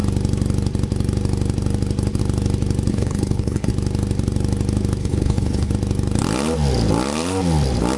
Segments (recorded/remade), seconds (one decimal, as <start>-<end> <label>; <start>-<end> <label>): 0.0-2.9 recorded; 2.9-3.7 remade; 3.7-5.0 recorded; 5.0-5.7 remade; 5.7-8.0 recorded